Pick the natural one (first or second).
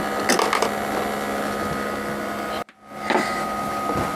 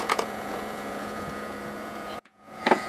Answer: first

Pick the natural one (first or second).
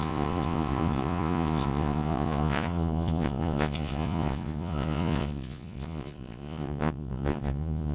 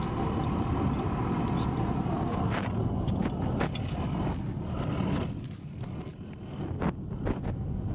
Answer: second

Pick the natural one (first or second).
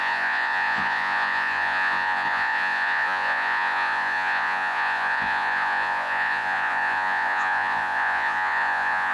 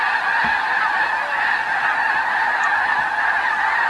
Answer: second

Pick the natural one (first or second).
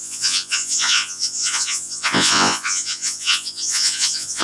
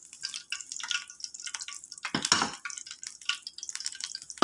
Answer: second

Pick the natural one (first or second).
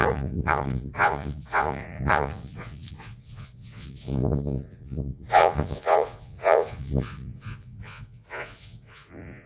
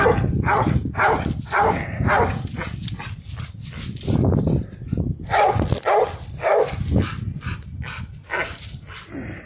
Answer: second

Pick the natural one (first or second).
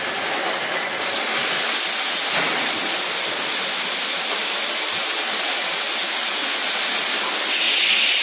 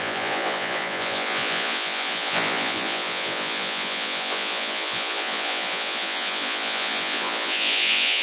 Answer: first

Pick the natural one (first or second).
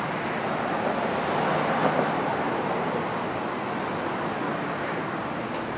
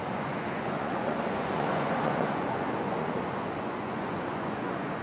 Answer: first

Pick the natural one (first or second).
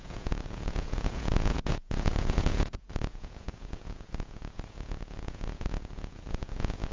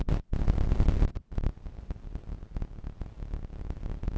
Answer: second